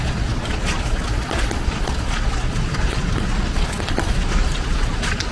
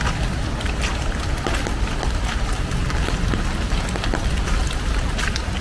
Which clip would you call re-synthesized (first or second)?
first